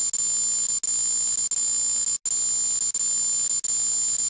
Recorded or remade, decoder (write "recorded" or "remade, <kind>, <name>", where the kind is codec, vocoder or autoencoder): recorded